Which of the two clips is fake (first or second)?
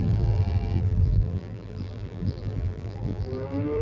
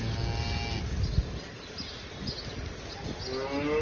first